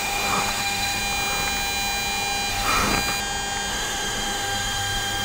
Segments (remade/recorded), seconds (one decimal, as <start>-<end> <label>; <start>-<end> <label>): 0.0-1.0 remade; 1.0-2.5 recorded; 2.5-2.9 remade; 2.9-3.7 recorded; 3.7-5.2 remade